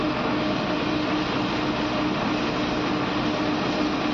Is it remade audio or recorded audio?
recorded